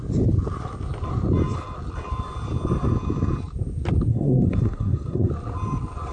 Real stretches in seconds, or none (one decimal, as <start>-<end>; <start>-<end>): 0.0-4.1; 5.3-6.1

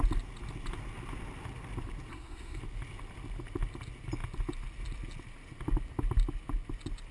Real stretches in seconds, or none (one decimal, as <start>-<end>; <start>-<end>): 0.0-2.1; 2.6-7.1

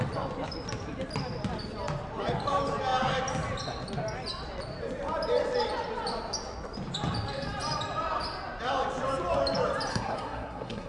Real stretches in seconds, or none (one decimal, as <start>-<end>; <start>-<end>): 0.0-9.9

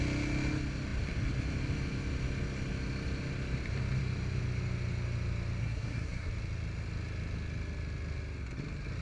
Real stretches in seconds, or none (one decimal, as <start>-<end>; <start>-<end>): 0.0-5.6; 6.3-9.0

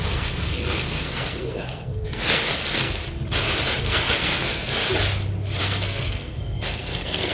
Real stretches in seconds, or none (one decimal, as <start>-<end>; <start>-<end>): 3.0-3.8; 4.8-5.6

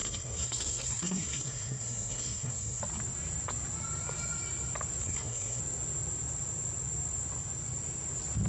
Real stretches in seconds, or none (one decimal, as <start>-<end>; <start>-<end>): 2.8-5.0; 5.6-8.5